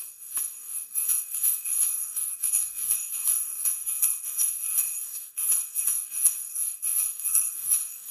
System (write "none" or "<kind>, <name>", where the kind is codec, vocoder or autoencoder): codec, DAC